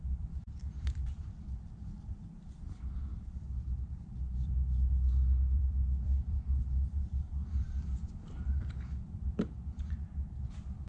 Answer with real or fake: fake